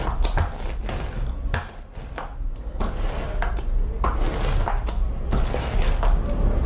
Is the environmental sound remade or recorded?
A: recorded